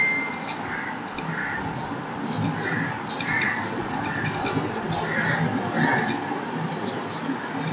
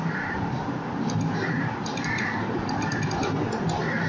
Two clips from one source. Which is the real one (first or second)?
first